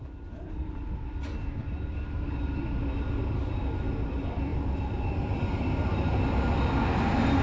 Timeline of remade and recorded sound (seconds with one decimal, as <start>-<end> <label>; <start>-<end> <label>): 0.0-7.4 recorded